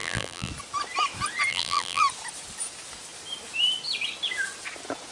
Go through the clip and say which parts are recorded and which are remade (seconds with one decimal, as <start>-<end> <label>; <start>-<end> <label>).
0.0-0.5 remade; 0.5-1.5 recorded; 1.5-2.0 remade; 2.0-5.1 recorded